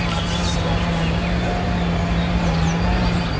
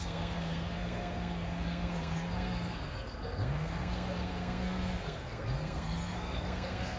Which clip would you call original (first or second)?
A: first